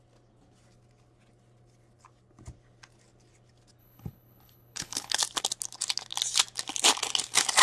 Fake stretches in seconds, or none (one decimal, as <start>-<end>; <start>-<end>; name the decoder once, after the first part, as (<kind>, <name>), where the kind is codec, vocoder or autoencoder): 3.8-5.2 (codec, HILCodec)

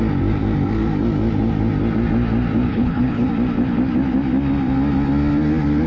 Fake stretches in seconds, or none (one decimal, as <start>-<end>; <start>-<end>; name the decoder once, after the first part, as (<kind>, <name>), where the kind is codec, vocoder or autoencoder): 2.7-3.3 (codec, HILCodec)